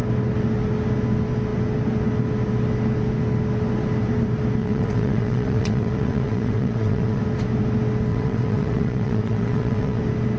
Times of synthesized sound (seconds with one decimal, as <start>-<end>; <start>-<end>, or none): 4.6-7.2; 8.1-10.0

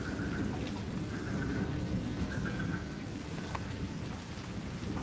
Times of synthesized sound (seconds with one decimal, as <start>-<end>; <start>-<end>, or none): 1.0-4.0

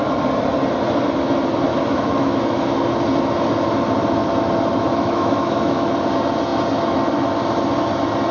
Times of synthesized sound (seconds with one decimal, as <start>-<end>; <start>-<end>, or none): 1.7-2.6; 4.9-5.9

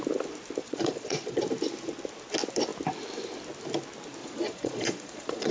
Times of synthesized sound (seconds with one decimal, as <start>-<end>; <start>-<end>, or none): 0.6-1.4; 4.2-5.5